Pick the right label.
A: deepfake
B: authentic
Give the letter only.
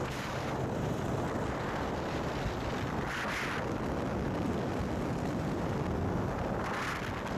B